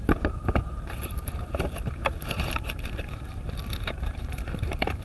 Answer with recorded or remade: remade